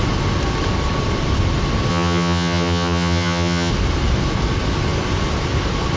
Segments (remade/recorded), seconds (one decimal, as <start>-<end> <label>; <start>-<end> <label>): 0.0-1.9 recorded; 1.9-3.7 remade; 3.7-6.0 recorded